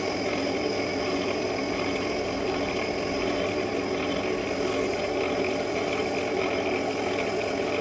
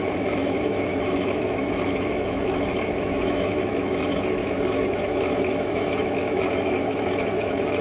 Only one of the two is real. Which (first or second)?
first